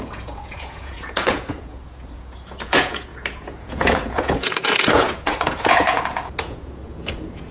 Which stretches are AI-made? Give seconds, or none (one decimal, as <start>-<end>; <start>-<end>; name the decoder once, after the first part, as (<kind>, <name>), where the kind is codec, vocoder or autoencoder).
0.0-7.5 (vocoder, Vocos)

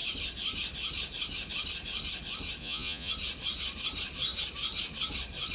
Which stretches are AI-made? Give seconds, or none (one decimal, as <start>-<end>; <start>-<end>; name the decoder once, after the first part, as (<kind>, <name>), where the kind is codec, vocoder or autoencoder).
2.6-3.1 (vocoder, Vocos)